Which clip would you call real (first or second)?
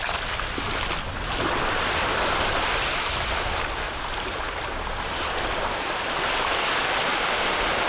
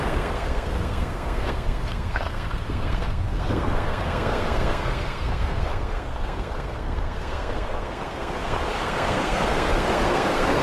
first